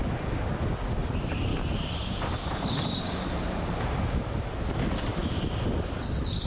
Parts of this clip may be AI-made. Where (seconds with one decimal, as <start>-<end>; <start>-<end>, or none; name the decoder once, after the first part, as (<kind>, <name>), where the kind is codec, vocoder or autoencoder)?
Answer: 1.0-4.5 (vocoder, BigVGAN v2)